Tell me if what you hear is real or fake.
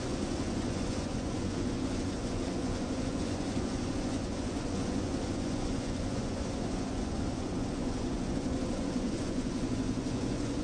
fake